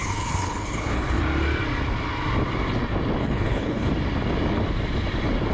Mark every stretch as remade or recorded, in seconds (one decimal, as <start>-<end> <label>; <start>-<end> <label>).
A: 0.0-1.2 remade; 1.2-3.2 recorded; 3.2-3.9 remade; 3.9-5.5 recorded